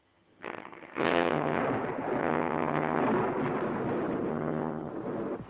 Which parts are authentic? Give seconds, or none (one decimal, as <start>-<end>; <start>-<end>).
1.6-2.2; 3.0-4.3; 4.9-5.5